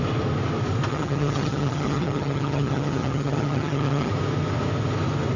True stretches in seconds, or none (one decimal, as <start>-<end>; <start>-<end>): 0.0-0.9; 4.1-5.4